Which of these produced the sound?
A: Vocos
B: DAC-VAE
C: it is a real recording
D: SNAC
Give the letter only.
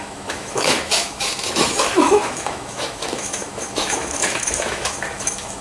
B